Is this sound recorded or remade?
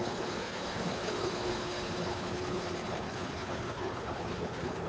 remade